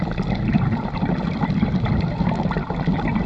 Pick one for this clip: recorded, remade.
recorded